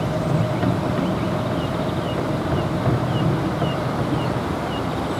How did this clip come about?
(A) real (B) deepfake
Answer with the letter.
A